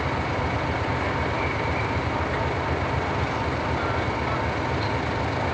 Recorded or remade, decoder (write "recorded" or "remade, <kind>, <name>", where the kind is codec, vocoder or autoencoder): recorded